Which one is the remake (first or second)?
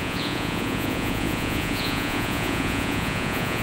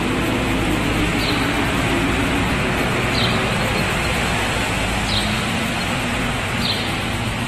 first